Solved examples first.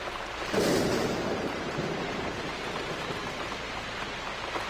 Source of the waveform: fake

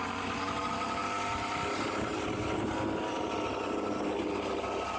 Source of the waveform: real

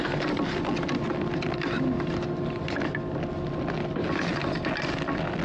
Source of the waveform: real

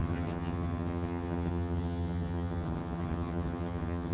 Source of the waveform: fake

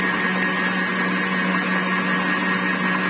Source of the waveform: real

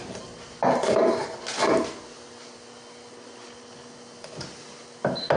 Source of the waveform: real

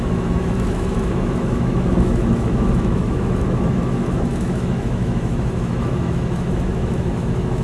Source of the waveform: fake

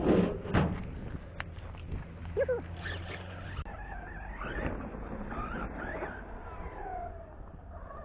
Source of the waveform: real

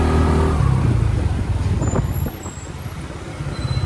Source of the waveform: real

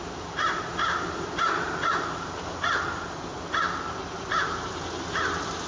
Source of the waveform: real